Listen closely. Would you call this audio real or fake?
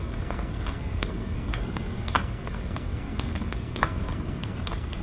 fake